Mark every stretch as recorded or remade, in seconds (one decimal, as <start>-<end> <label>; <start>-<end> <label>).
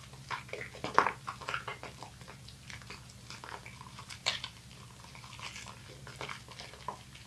0.0-7.3 recorded